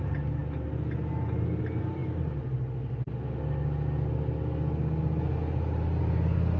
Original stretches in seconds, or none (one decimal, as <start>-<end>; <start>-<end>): 0.0-6.6